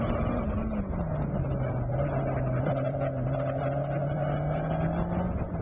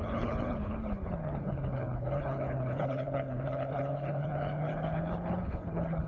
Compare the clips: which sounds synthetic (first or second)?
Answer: second